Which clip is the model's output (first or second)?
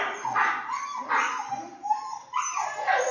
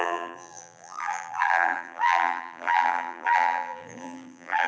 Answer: second